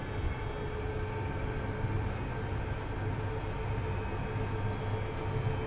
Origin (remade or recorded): recorded